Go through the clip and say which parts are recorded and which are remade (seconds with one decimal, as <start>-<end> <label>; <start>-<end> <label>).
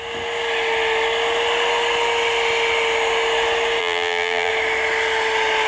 0.0-3.8 recorded; 3.8-4.5 remade; 4.5-5.7 recorded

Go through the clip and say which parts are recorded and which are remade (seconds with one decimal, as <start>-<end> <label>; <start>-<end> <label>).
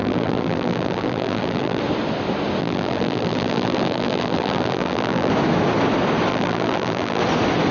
0.0-1.8 remade; 1.8-2.6 recorded; 2.6-5.3 remade; 5.3-6.3 recorded; 6.3-7.2 remade; 7.2-7.7 recorded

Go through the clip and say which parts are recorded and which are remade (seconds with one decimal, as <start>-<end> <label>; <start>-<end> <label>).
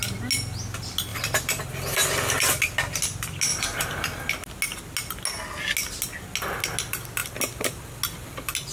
0.0-1.1 recorded; 1.1-1.6 remade; 1.6-3.5 recorded; 3.5-4.3 remade; 4.3-8.7 recorded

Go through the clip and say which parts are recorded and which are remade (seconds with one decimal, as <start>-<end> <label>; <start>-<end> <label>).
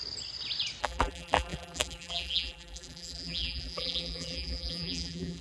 0.0-0.8 recorded; 0.8-5.4 remade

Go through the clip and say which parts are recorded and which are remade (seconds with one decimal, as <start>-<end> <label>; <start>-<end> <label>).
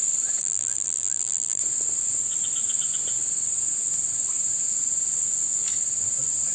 0.0-0.4 recorded; 0.4-1.6 remade; 1.6-6.5 recorded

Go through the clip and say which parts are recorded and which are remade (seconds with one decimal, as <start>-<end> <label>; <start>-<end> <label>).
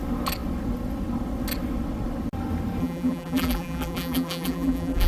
0.0-2.8 recorded; 2.8-5.1 remade